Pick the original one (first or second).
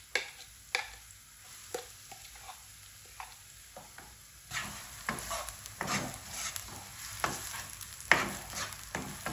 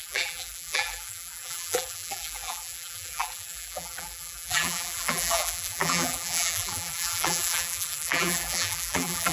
first